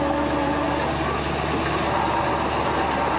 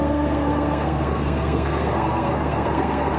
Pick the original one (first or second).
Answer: first